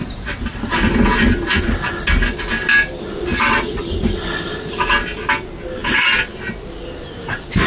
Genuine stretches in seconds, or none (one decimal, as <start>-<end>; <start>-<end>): 0.0-7.7